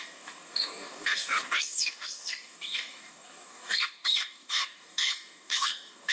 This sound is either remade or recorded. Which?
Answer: remade